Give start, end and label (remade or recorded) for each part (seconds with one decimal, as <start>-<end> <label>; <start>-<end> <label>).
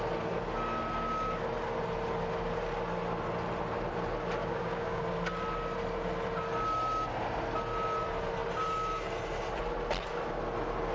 0.0-4.4 recorded; 4.4-5.0 remade; 5.0-10.9 recorded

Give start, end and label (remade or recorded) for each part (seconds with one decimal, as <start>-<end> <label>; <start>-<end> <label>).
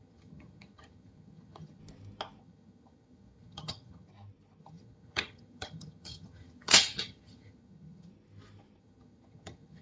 0.0-1.8 remade; 1.8-2.4 recorded; 2.4-4.1 remade; 4.1-4.6 recorded; 4.6-8.1 remade; 8.1-8.8 recorded; 8.8-9.8 remade